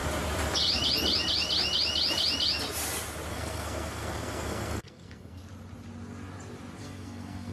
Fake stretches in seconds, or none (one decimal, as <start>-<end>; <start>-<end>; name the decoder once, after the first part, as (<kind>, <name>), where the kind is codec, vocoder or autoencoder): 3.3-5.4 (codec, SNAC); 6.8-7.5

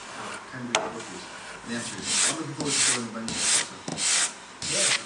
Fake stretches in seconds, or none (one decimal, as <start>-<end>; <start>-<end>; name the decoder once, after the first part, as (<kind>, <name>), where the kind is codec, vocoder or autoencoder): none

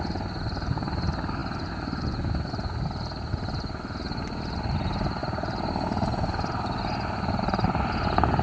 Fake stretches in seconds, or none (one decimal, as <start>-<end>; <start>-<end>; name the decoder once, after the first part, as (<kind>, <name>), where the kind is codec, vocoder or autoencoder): none

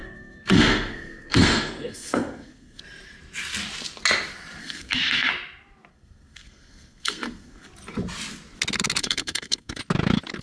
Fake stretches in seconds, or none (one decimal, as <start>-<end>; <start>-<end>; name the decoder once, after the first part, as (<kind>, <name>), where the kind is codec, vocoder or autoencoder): 0.0-2.8 (codec, SNAC); 4.6-5.3; 5.9-7.7; 9.0-9.8